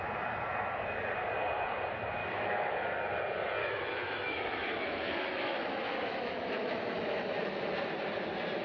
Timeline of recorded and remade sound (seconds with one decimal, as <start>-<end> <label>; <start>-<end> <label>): 0.0-2.2 recorded; 2.2-2.7 remade; 2.7-3.6 recorded; 3.6-7.6 remade; 7.6-8.6 recorded